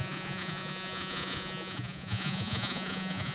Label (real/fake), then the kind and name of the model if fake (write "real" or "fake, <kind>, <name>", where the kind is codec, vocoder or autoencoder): fake, vocoder, Vocos